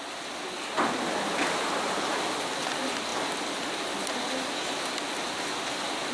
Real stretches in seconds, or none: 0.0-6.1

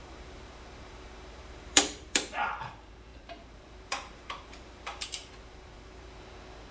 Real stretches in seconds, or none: 2.7-3.1; 6.2-6.7

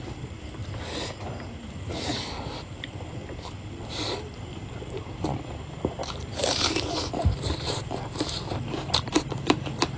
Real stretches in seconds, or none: 0.6-2.6

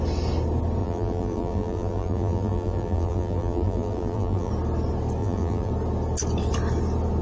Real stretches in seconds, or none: 0.0-0.8; 4.5-5.2; 5.7-7.2

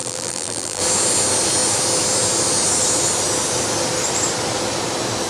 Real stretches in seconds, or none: 0.8-5.3

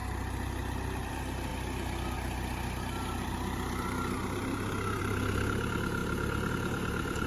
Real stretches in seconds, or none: 6.0-6.5

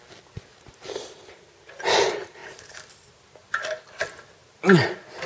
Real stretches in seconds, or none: 0.0-0.5; 1.3-2.4; 3.1-5.3

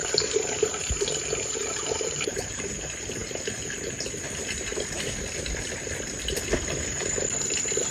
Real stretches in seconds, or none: 2.7-7.9